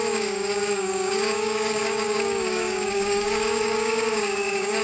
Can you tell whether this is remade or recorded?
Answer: remade